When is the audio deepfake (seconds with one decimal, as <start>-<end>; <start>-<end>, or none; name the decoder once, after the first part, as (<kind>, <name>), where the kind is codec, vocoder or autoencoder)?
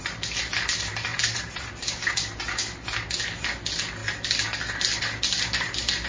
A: 1.1-1.7 (vocoder, BigVGAN v2)